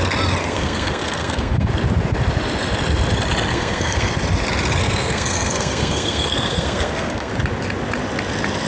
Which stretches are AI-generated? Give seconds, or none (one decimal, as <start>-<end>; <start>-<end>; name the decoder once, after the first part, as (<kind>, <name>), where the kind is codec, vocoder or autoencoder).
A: 0.4-1.7 (codec, SNAC); 3.5-4.1; 4.8-7.3